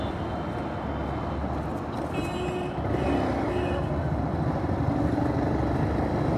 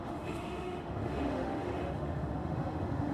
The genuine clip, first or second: first